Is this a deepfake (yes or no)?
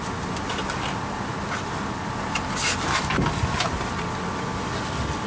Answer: no